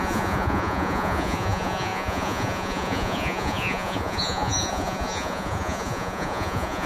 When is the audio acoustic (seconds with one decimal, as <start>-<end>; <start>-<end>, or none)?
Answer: none